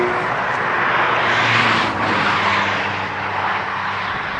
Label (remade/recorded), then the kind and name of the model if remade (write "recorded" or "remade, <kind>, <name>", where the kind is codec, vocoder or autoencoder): recorded